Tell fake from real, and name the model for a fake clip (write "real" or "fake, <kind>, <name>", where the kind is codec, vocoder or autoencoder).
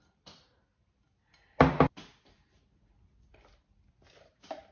real